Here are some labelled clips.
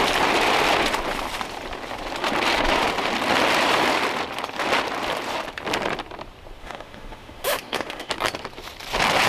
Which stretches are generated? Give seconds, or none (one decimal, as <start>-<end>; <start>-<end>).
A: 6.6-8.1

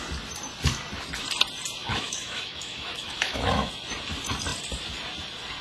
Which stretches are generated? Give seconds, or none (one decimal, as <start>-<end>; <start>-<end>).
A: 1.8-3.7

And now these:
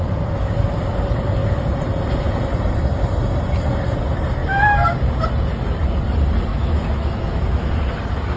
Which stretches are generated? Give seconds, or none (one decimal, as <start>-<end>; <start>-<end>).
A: 6.5-7.7

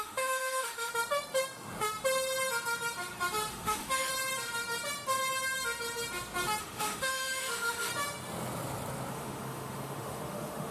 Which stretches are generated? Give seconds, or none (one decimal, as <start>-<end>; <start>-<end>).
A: 0.0-0.9; 3.5-4.1; 6.6-7.9; 9.1-10.7

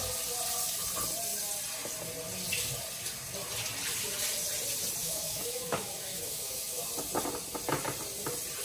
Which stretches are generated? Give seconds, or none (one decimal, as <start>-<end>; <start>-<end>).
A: 5.0-6.9